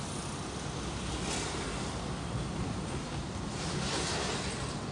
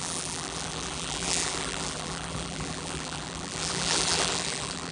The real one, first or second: first